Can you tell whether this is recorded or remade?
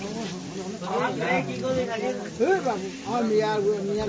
recorded